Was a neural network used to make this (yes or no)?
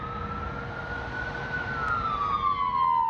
no